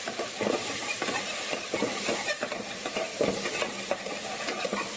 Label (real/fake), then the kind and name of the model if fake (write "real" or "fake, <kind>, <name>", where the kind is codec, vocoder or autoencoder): fake, vocoder, BigVGAN v2